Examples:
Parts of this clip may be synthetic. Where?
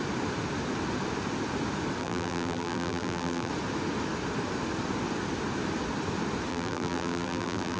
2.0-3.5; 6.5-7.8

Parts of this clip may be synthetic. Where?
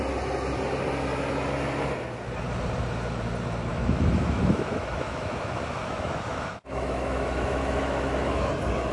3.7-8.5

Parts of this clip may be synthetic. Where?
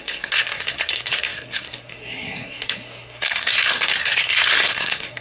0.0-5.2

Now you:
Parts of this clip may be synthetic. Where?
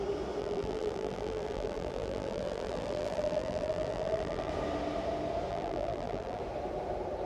0.4-4.5; 5.5-6.4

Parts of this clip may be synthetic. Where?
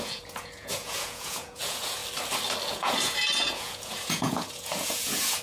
0.0-2.0; 2.7-5.4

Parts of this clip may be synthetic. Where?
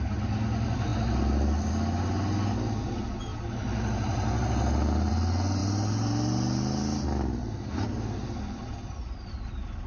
0.9-1.7; 5.6-9.9